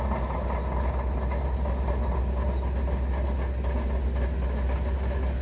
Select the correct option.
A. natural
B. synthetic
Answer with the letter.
A